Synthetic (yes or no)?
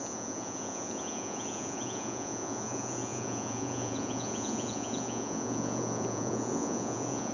yes